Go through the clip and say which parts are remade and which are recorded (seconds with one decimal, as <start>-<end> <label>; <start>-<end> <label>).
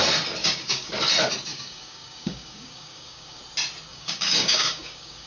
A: 0.0-0.4 recorded; 0.4-0.9 remade; 0.9-1.5 recorded; 1.5-3.4 remade; 3.4-3.9 recorded; 3.9-5.3 remade